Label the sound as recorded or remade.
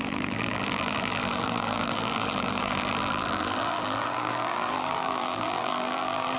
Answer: remade